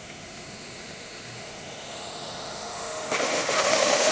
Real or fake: fake